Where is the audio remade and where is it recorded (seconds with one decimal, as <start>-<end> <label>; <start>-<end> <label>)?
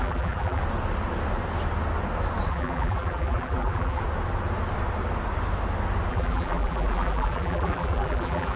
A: 0.0-0.6 remade; 0.6-2.5 recorded; 2.5-4.0 remade; 4.0-6.1 recorded; 6.1-8.6 remade